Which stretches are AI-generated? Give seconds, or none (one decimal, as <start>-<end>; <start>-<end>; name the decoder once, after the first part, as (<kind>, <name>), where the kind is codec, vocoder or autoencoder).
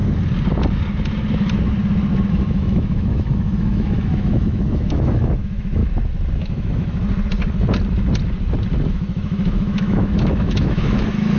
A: 2.3-5.8 (autoencoder, DAC-VAE); 6.4-7.0; 8.9-11.4